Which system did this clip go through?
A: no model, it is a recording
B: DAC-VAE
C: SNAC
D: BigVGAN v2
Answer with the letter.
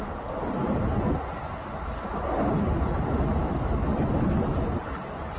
A